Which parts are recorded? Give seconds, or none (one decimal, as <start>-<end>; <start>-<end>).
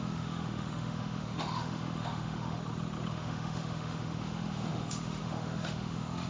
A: 2.6-3.1